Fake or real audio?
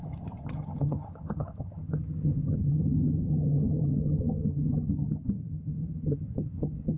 fake